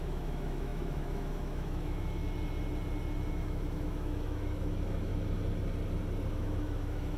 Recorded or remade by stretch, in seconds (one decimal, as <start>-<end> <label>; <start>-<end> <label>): 0.0-2.2 remade; 2.2-3.3 recorded; 3.3-5.1 remade; 5.1-6.3 recorded; 6.3-7.2 remade